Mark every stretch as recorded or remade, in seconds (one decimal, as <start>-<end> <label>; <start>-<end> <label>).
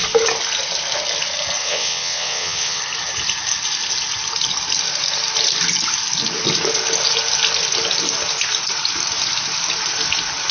0.0-1.6 recorded; 1.6-2.8 remade; 2.8-10.5 recorded